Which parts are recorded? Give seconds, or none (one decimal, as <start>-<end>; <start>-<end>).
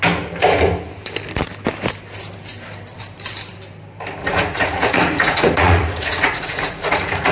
0.0-4.2